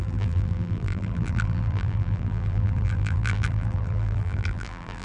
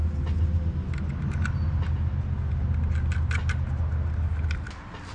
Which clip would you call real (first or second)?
second